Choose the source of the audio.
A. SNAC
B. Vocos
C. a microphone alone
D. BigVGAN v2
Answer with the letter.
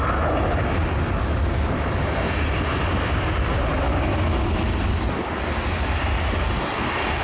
C